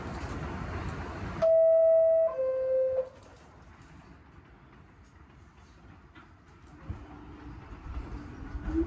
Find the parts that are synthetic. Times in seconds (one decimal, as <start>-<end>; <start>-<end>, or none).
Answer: none